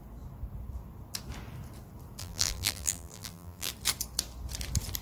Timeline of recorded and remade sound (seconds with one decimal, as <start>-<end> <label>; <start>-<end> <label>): 0.0-2.2 recorded; 2.2-3.7 remade; 3.7-5.0 recorded